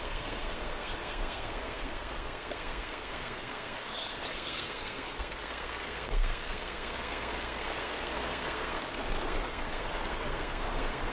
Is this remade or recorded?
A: remade